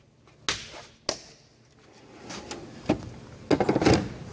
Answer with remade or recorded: recorded